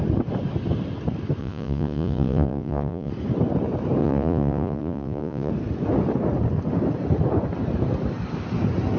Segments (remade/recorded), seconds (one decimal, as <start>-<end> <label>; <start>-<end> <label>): 0.0-1.4 recorded; 1.4-3.1 remade; 3.1-4.0 recorded; 4.0-5.5 remade; 5.5-9.0 recorded